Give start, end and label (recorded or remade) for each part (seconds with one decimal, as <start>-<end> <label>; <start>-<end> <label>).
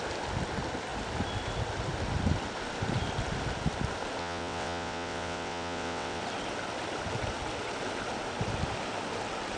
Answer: 0.0-4.2 recorded; 4.2-6.2 remade; 6.2-9.6 recorded